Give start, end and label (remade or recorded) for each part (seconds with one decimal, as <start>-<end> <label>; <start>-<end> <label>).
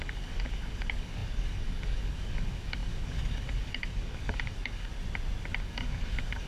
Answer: 0.0-4.9 remade; 4.9-5.6 recorded; 5.6-6.5 remade